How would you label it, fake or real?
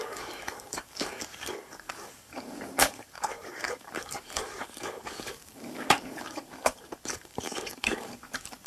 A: fake